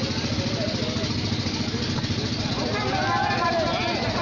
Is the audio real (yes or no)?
yes